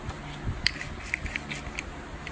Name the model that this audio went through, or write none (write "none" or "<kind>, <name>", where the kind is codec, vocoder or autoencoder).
none